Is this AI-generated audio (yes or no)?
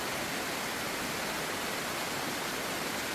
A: no